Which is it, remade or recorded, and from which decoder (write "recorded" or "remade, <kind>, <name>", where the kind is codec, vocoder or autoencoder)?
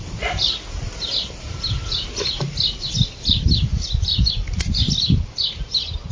recorded